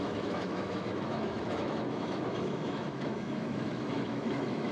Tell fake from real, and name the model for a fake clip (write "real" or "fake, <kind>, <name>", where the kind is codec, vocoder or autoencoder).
fake, autoencoder, DAC-VAE